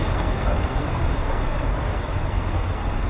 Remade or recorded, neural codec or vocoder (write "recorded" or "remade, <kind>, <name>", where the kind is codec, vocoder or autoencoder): remade, codec, SNAC